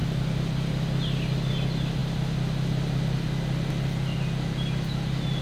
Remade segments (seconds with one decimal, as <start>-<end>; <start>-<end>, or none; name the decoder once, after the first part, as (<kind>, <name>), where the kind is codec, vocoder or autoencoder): none